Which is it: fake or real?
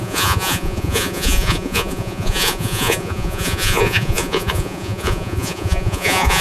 fake